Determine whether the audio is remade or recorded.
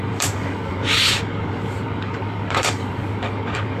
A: remade